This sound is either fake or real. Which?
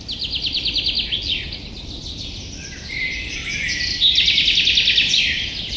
real